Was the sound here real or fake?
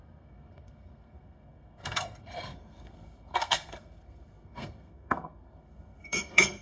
fake